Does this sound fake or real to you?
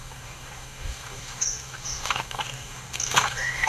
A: fake